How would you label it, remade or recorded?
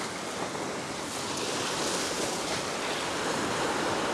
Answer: remade